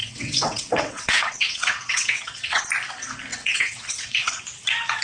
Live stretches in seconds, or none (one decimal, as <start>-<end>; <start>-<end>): 2.6-3.3; 4.4-5.0